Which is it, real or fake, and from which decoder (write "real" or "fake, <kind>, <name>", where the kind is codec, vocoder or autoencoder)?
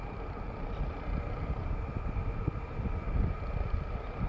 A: fake, vocoder, BigVGAN v2